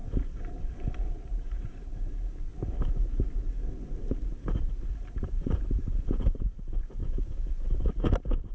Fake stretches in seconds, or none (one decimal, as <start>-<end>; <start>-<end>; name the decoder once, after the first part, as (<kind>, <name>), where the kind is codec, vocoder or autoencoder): 0.0-2.5 (vocoder, BigVGAN v2); 5.1-8.5